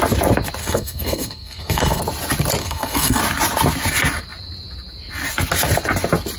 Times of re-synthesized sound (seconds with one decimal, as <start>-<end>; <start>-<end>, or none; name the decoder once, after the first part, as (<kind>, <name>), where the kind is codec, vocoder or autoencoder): 0.6-2.0 (codec, SNAC); 2.6-3.2